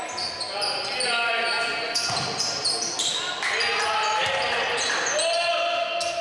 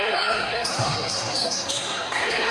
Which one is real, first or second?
first